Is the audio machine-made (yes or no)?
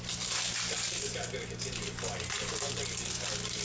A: no